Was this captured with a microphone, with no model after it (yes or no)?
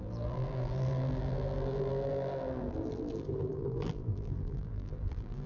no